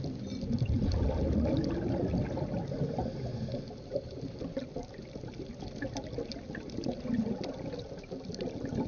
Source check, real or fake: real